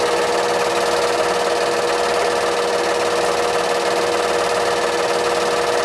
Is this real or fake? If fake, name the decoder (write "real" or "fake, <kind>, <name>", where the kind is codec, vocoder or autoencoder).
real